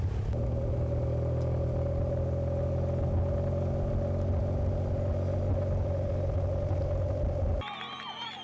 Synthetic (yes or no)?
no